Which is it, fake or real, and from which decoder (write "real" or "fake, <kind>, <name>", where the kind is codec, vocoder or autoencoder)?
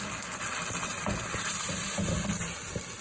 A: real